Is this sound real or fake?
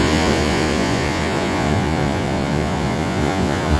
fake